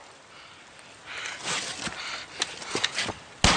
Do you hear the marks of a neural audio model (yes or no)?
no